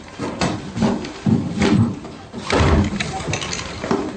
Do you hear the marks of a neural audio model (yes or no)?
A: no